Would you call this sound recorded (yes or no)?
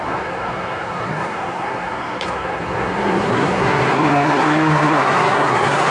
no